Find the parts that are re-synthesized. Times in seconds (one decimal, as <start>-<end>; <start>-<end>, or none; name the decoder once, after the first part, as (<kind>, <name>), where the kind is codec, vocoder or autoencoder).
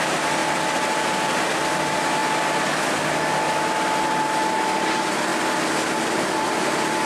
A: none